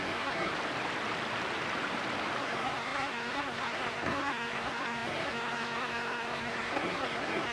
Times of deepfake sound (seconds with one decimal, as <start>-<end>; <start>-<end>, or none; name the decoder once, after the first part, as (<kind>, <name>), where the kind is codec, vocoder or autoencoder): 0.0-0.5 (codec, SNAC); 2.4-7.5